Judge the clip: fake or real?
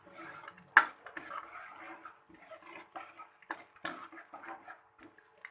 real